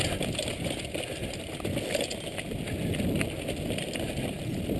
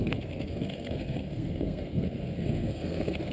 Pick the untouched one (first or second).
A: first